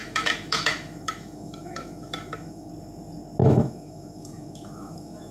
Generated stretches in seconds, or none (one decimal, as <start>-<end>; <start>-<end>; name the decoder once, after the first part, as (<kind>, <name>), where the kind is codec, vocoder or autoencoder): 0.0-2.7 (autoencoder, DAC-VAE); 3.4-5.3